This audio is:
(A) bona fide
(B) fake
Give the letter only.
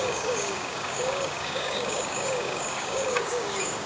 B